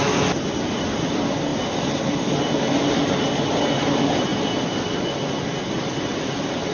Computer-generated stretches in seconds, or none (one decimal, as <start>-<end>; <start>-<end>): none